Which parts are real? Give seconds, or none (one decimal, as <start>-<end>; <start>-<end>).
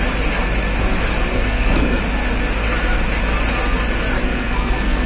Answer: 0.0-1.3; 2.0-4.2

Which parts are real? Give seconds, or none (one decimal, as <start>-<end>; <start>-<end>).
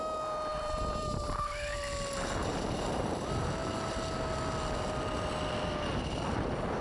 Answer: 0.0-0.5; 1.4-2.4; 3.2-6.8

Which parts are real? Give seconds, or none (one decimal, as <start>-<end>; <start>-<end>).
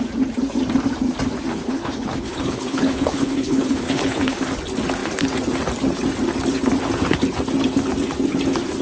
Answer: 0.0-1.5; 4.4-8.8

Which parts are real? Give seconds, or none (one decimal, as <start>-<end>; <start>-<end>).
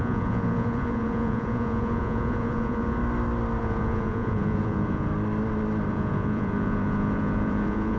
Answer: 3.0-3.6; 5.1-5.9